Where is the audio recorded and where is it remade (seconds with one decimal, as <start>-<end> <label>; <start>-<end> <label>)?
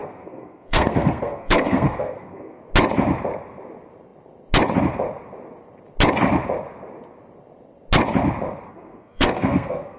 0.0-2.6 remade; 2.6-8.7 recorded; 8.7-10.0 remade